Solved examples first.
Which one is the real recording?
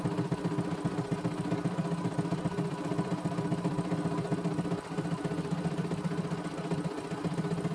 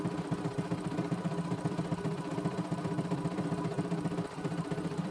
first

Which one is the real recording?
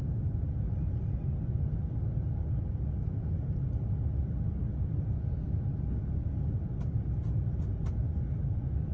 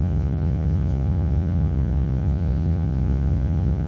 first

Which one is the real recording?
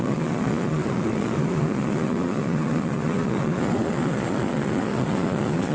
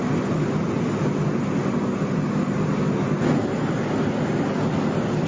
second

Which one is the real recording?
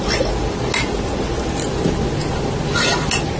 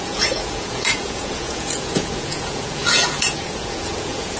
first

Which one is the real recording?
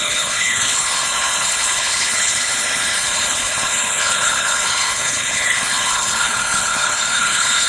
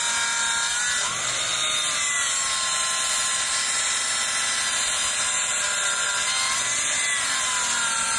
second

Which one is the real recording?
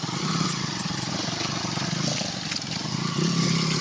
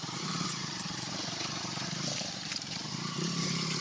first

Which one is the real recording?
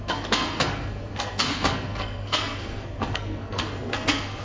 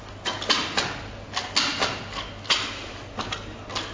second